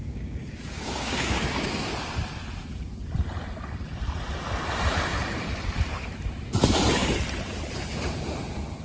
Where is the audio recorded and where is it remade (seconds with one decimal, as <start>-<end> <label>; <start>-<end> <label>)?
0.0-1.9 remade; 1.9-8.8 recorded